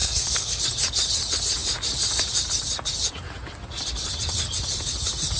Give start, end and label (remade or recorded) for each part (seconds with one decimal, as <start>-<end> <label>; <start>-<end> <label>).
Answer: 0.0-0.6 remade; 0.6-5.4 recorded

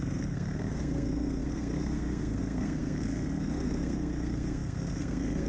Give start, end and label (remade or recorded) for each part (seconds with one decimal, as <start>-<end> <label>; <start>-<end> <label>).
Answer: 0.0-5.5 remade

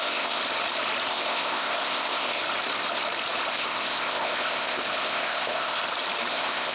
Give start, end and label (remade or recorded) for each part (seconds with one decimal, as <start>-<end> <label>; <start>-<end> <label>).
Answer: 0.0-0.4 remade; 0.4-1.1 recorded; 1.1-2.4 remade; 2.4-3.5 recorded; 3.5-5.8 remade; 5.8-6.3 recorded; 6.3-6.7 remade

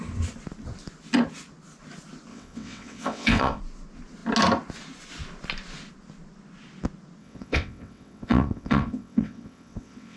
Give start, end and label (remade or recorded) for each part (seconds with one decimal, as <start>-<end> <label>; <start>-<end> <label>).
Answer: 0.0-2.3 recorded; 2.3-3.6 remade; 3.6-7.2 recorded; 7.2-10.2 remade

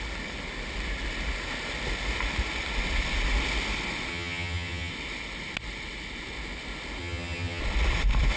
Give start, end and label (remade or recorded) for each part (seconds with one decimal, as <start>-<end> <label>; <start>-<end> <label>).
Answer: 0.0-4.1 recorded; 4.1-4.9 remade; 4.9-7.0 recorded; 7.0-7.6 remade; 7.6-8.4 recorded

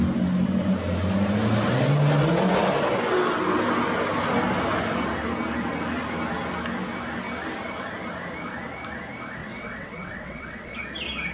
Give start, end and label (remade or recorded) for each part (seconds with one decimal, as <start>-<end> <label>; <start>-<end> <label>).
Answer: 0.0-9.4 recorded; 9.4-10.7 remade; 10.7-11.3 recorded

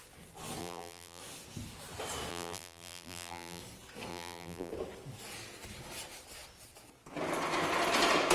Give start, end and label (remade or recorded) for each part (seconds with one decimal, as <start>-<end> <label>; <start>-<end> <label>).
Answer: 0.0-0.6 recorded; 0.6-1.2 remade; 1.2-2.3 recorded; 2.3-3.6 remade; 3.6-4.1 recorded; 4.1-4.7 remade; 4.7-8.3 recorded